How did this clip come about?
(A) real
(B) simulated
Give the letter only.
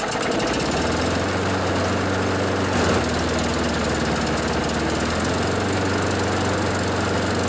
A